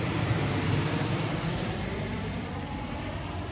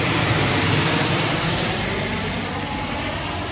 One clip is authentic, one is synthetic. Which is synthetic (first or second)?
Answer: first